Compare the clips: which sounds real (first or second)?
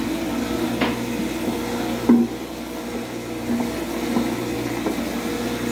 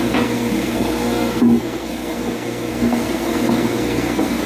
first